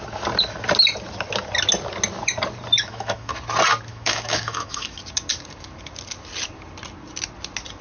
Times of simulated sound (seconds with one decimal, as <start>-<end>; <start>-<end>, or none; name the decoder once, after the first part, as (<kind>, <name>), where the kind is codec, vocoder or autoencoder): 2.7-3.3 (autoencoder, DAC-VAE); 3.9-5.0